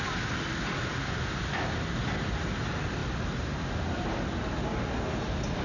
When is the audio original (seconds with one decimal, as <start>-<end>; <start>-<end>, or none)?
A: 0.0-5.6